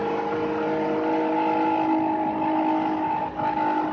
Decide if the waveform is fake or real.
real